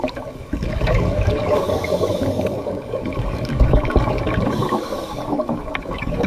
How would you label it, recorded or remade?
remade